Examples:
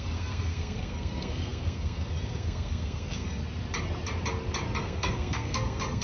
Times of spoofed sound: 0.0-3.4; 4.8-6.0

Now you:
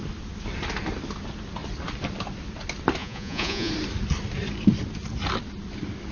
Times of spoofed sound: 3.0-3.7